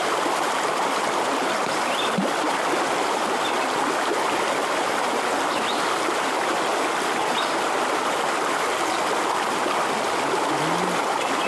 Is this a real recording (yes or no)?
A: yes